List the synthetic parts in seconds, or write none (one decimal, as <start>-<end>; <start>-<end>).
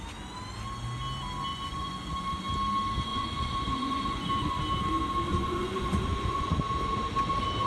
1.5-2.4; 3.1-4.5; 5.3-6.6